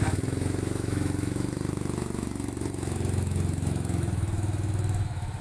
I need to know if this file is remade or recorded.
remade